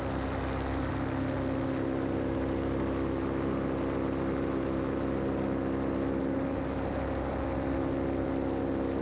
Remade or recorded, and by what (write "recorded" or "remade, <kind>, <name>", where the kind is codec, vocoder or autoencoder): recorded